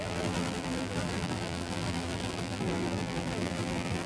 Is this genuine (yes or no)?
no